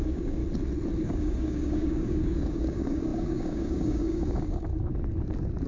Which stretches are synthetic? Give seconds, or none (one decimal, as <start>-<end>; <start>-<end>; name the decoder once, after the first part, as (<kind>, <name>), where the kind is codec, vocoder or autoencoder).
0.0-0.4 (codec, DAC); 1.0-4.7